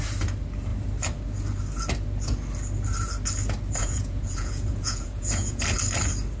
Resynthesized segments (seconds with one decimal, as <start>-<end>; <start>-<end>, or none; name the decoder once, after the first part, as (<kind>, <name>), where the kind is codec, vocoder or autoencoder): 3.8-5.6 (vocoder, Vocos)